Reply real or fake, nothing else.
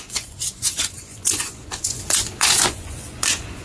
fake